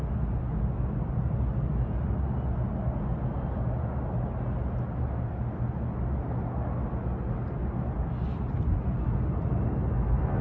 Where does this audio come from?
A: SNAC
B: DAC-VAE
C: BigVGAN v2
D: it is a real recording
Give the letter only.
D